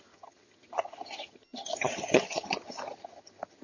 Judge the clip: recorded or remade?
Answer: remade